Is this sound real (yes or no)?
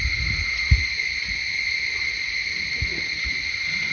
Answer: yes